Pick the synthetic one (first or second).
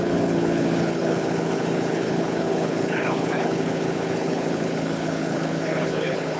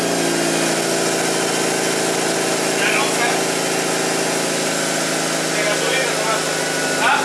first